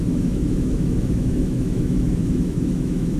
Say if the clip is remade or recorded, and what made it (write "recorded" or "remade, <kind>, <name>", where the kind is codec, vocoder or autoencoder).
remade, autoencoder, DAC-VAE